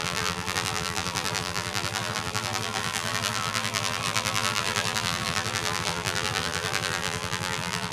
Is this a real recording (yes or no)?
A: no